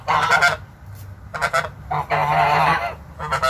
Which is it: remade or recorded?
recorded